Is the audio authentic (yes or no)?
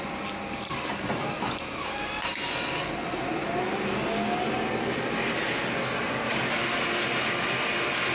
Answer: yes